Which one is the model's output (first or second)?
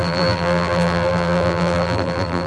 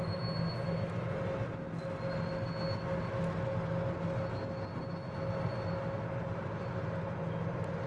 first